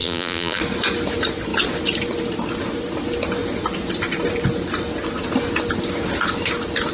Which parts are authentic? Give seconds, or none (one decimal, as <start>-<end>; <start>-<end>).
0.6-6.9